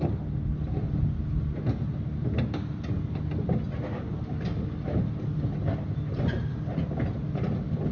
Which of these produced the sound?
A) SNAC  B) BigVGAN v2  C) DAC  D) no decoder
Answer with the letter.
D